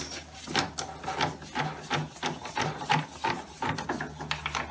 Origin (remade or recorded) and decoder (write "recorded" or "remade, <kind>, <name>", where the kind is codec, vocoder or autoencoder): recorded